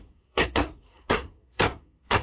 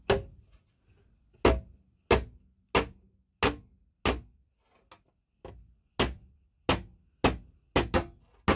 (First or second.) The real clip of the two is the second